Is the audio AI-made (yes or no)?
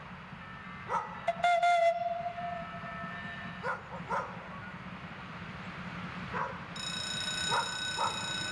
no